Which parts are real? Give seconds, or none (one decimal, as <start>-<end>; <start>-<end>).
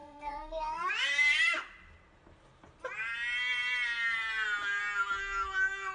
0.9-5.9